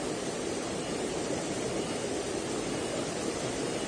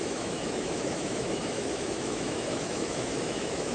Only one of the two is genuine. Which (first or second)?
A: first